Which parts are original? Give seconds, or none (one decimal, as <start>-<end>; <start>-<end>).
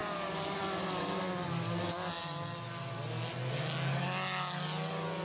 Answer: 0.0-5.2